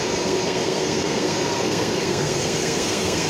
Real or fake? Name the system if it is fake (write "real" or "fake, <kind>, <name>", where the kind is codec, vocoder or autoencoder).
fake, codec, SNAC